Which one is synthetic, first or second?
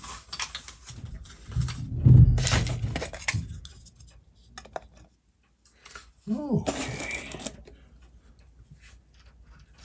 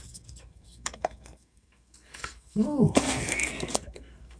second